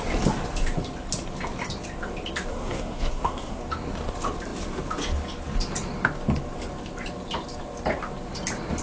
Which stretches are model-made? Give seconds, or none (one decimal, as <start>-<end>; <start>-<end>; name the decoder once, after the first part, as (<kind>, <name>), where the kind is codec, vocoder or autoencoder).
2.5-3.6 (codec, SNAC)